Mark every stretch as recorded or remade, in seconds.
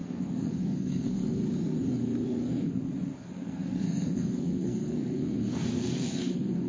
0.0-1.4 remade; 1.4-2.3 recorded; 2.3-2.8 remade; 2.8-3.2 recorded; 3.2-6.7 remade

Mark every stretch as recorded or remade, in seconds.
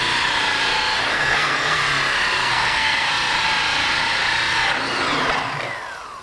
0.0-1.1 recorded; 1.1-1.8 remade; 1.8-2.4 recorded; 2.4-3.1 remade; 3.1-6.2 recorded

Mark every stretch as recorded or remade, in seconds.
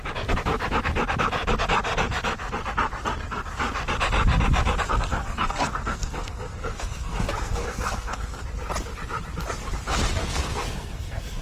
0.0-5.1 recorded; 5.1-8.4 remade; 8.4-10.2 recorded; 10.2-11.4 remade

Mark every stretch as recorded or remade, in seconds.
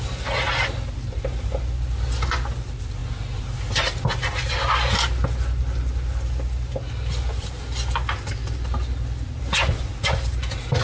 0.0-10.8 recorded